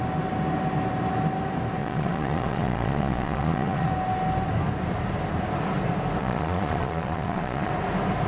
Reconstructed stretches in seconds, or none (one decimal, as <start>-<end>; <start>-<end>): 1.8-3.9; 6.2-7.7